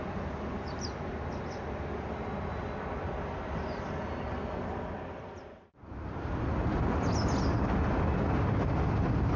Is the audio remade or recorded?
recorded